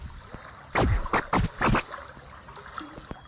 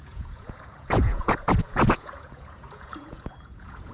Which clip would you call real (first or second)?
first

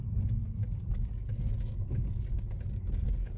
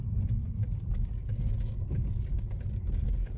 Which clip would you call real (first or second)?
first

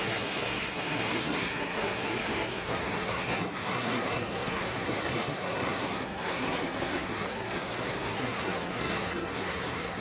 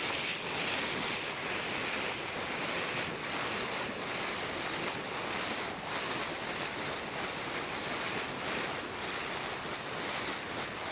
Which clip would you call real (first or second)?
second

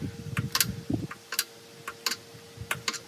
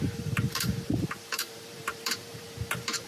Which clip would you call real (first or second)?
first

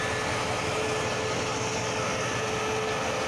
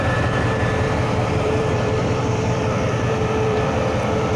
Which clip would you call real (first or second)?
first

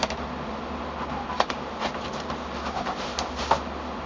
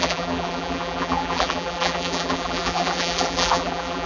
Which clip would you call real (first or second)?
first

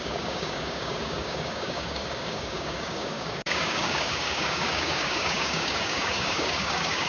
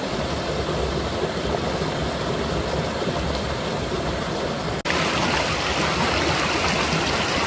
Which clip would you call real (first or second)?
second